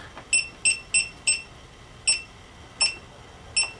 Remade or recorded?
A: recorded